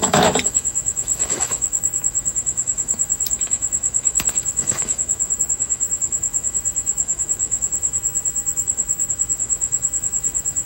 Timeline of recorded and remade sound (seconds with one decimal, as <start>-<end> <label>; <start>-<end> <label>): 0.0-10.7 remade